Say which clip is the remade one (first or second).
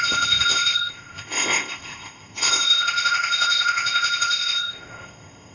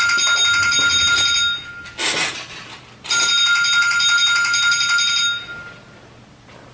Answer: first